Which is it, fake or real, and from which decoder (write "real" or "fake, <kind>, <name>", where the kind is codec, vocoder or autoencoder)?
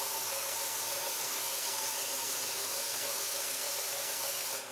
fake, codec, SNAC